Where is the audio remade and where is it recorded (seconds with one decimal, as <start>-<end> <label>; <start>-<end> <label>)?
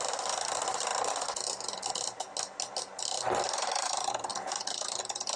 0.0-5.4 recorded